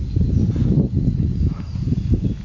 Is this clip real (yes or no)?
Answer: yes